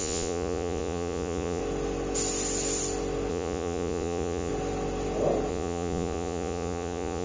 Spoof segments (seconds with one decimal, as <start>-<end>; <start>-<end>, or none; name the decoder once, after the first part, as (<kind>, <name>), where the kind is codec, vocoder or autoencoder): 0.0-1.6 (vocoder, Vocos); 3.3-4.5; 5.5-7.2